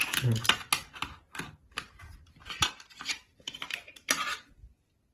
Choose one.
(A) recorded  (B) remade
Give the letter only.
A